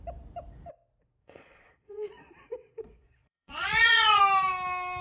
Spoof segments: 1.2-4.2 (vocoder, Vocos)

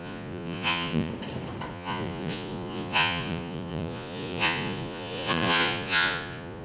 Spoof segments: 0.0-1.1 (vocoder, Vocos); 1.7-6.6

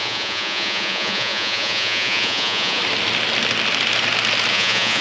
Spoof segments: 0.0-2.8 (vocoder, Vocos); 4.5-5.0

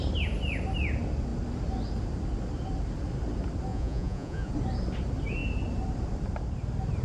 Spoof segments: 3.7-4.5 (vocoder, Vocos)

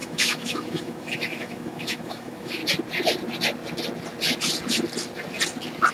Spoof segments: 0.0-2.6 (autoencoder, DAC-VAE)

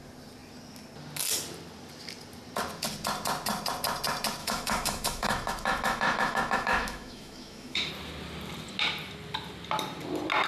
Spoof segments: 4.4-7.9 (autoencoder, DAC-VAE)